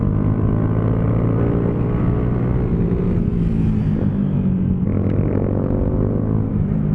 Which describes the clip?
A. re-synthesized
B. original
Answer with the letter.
B